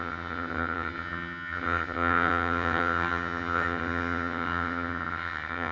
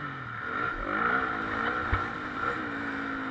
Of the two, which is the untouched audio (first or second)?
second